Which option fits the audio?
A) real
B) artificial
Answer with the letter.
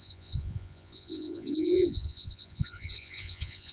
B